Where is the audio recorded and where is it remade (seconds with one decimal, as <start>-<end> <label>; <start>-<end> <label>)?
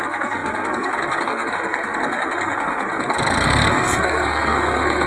0.0-5.1 remade